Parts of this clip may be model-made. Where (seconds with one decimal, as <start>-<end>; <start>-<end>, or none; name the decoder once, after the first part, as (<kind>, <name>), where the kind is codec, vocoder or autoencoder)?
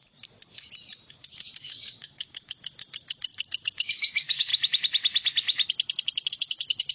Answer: 1.1-4.5 (codec, DAC); 6.3-6.9